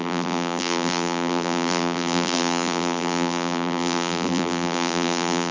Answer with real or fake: fake